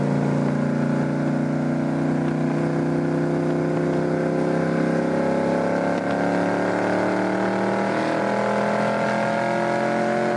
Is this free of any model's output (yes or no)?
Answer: yes